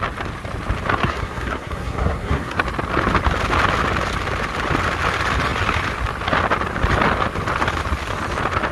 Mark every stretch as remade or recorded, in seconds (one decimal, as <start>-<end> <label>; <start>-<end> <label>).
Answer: 0.0-1.0 recorded; 1.0-2.6 remade; 2.6-8.7 recorded